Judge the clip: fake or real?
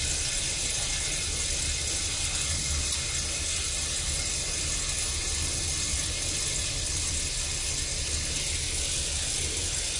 real